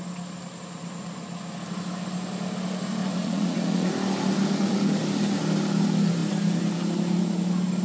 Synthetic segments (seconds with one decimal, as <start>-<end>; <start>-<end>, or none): 3.0-3.9